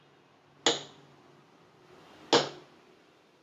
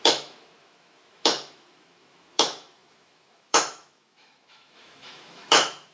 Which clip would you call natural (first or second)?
first